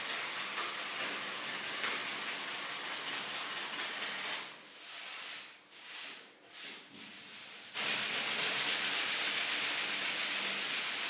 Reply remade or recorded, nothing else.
recorded